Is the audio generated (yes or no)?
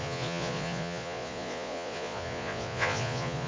yes